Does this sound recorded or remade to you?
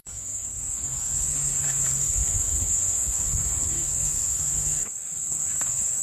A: remade